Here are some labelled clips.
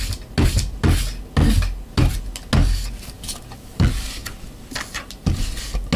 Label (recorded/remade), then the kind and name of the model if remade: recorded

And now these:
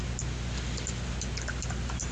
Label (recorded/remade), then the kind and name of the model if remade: recorded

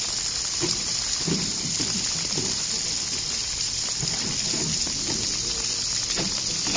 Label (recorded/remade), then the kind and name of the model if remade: recorded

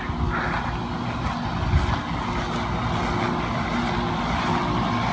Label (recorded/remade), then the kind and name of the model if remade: recorded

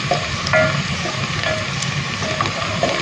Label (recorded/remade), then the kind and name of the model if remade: recorded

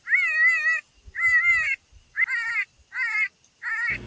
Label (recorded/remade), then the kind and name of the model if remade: recorded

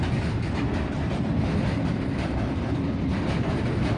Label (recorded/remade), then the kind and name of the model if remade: recorded